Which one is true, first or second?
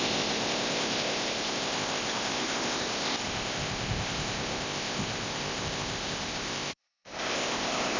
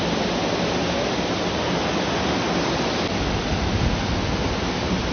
second